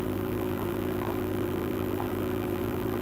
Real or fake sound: fake